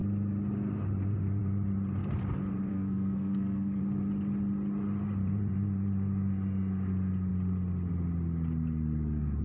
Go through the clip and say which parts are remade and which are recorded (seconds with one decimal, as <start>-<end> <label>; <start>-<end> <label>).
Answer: 0.0-2.7 recorded; 2.7-3.8 remade; 3.8-9.4 recorded